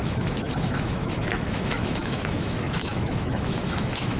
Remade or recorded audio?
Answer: remade